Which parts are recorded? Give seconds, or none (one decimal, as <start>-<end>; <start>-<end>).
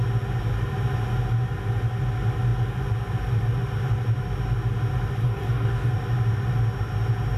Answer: 0.0-5.2; 5.9-7.4